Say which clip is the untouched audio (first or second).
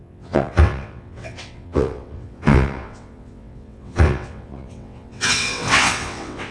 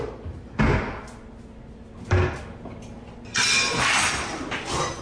second